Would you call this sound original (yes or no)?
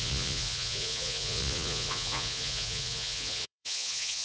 no